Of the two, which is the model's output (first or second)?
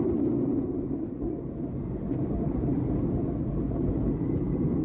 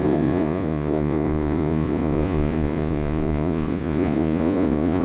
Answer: second